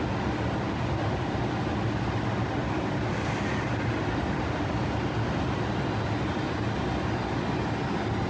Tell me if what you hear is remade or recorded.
recorded